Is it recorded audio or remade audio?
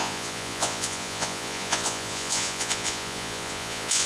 remade